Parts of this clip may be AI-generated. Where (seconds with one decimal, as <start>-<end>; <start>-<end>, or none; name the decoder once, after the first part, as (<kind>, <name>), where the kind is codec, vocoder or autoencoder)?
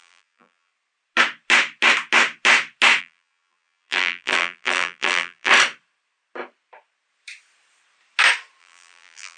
0.0-0.7 (vocoder, BigVGAN v2); 3.0-5.5; 8.6-9.4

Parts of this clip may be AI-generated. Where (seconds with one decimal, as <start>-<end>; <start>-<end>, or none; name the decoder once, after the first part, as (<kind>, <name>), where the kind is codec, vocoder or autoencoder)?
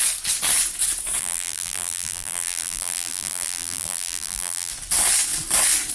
1.2-4.7 (vocoder, BigVGAN v2)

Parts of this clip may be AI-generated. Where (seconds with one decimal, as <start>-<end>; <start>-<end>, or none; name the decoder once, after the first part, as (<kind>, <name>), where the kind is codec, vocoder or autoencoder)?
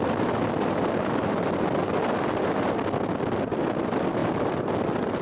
4.2-4.8 (vocoder, BigVGAN v2)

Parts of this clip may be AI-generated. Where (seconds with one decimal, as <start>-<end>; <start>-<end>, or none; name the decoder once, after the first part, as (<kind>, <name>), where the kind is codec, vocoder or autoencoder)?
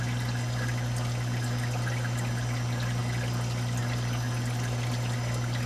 none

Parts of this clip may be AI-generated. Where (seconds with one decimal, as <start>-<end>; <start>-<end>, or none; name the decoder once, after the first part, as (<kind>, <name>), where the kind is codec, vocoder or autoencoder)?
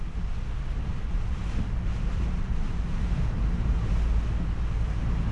0.9-3.9 (vocoder, BigVGAN v2)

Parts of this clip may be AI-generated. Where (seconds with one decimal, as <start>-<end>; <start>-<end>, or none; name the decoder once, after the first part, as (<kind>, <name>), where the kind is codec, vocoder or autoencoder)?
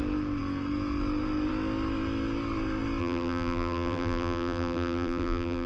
3.0-5.7 (vocoder, BigVGAN v2)